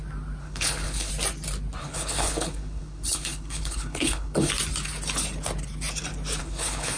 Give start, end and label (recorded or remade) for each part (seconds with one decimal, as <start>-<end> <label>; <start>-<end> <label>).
0.0-0.4 recorded; 0.4-1.1 remade; 1.1-1.8 recorded; 1.8-4.5 remade; 4.5-6.4 recorded; 6.4-7.0 remade